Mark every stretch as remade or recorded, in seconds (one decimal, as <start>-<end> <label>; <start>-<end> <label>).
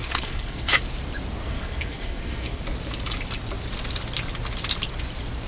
0.0-0.8 remade; 0.8-1.4 recorded; 1.4-2.6 remade; 2.6-5.5 recorded